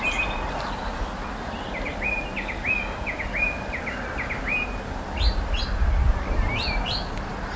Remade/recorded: recorded